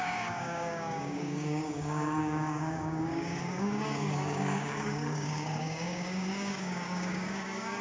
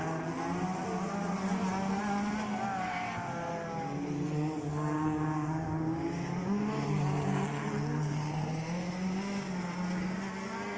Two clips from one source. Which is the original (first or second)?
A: second